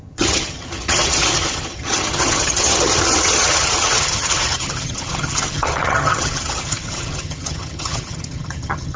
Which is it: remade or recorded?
remade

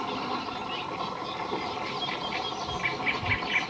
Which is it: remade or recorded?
recorded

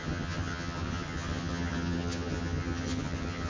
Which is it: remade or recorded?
remade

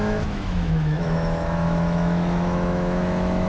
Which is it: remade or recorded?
remade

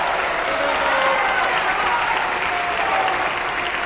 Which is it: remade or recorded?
recorded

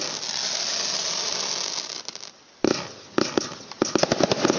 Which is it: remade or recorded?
recorded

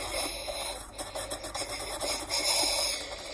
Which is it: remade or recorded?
recorded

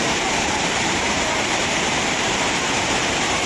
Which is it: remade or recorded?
remade